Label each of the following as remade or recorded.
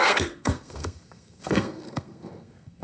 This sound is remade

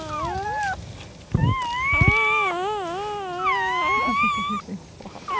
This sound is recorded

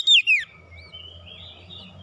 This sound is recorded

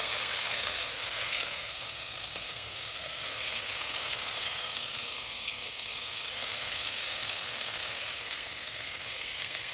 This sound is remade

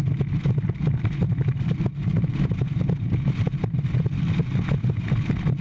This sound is recorded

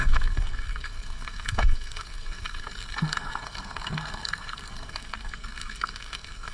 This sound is remade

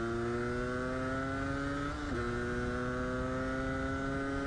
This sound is recorded